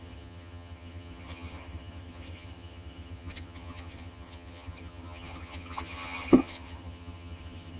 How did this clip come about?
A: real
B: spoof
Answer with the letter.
B